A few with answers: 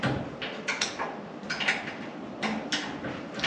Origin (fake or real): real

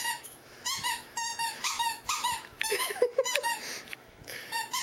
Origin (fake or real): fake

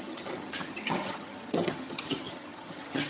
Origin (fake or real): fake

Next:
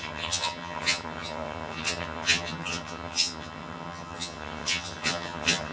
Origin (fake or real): fake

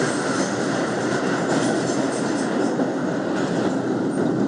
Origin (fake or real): real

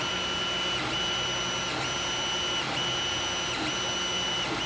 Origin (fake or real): real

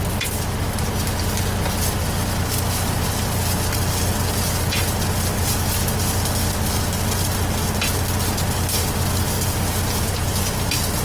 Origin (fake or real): real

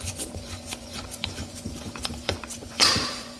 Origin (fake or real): fake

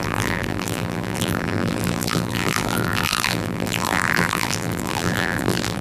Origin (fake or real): fake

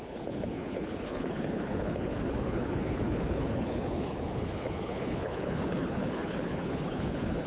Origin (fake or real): fake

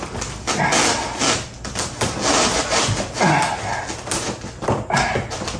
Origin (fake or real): real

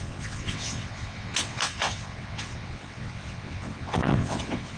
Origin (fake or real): fake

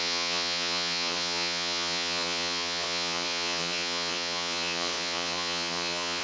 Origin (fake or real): fake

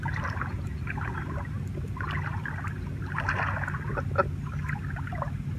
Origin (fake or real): real